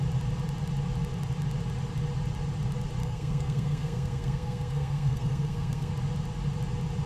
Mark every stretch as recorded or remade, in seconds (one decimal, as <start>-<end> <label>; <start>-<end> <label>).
0.0-3.0 recorded; 3.0-5.9 remade; 5.9-7.1 recorded